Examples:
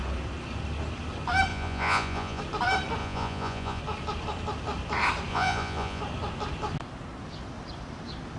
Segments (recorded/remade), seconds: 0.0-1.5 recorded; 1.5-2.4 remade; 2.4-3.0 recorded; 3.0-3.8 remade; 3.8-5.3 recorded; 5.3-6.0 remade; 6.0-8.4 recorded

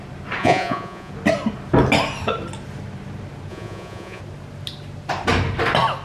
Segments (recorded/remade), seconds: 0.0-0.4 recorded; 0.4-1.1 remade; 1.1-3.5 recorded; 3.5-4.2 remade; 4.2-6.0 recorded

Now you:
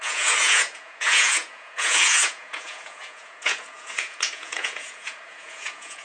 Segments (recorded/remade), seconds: 0.0-6.0 remade